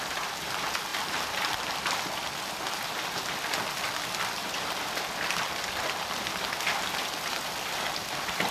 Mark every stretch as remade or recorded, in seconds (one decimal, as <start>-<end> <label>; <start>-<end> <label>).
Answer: 0.0-8.5 recorded